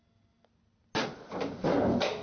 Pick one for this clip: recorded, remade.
recorded